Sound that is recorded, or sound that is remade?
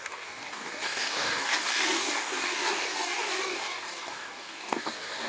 remade